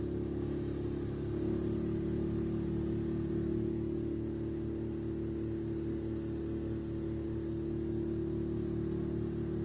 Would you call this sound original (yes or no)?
yes